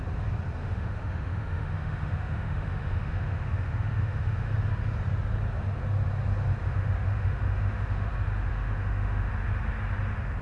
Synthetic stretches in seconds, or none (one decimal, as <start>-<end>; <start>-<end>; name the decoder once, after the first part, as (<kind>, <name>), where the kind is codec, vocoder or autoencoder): 0.6-4.5 (autoencoder, DAC-VAE); 6.6-8.1; 8.5-9.3